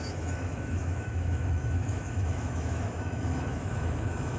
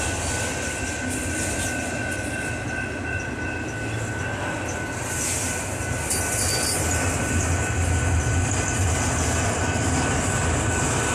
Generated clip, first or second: first